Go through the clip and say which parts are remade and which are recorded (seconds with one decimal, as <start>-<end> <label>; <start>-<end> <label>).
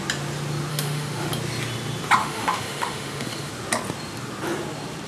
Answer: 0.0-0.7 recorded; 0.7-1.3 remade; 1.3-2.2 recorded; 2.2-3.5 remade; 3.5-5.1 recorded